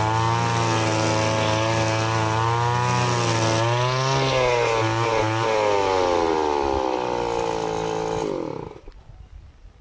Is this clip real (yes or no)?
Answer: yes